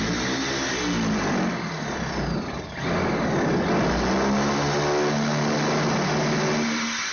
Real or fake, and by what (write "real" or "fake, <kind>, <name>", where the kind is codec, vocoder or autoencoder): real